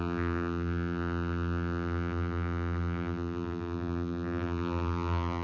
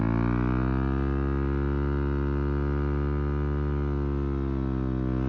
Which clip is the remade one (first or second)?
first